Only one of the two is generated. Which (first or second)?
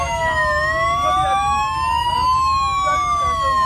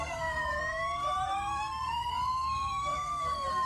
second